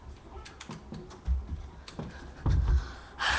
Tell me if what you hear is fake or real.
real